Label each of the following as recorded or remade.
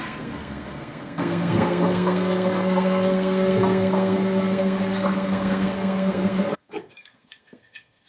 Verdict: remade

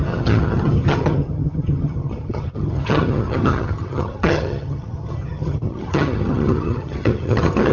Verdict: remade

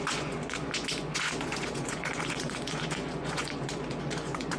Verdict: remade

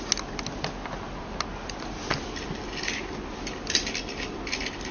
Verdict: recorded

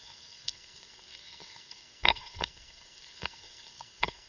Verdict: remade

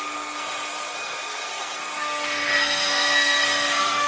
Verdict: remade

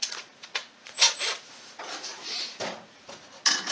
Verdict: remade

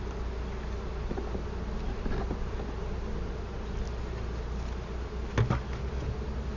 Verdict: recorded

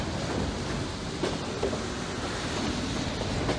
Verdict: recorded